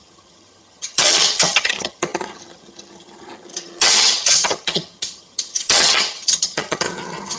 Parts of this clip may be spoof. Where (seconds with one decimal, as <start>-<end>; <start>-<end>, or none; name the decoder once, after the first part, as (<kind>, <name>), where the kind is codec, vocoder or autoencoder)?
0.0-7.4 (vocoder, HiFi-GAN)